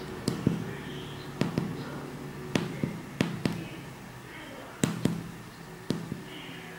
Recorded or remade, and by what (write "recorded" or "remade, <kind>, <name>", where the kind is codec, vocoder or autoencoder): recorded